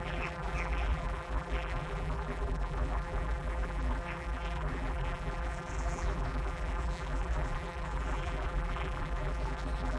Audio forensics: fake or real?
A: fake